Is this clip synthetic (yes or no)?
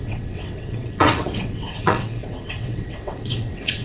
yes